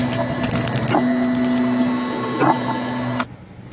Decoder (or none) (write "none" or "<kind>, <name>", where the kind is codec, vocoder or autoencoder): none